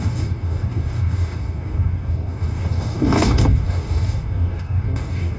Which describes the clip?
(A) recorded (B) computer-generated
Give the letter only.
B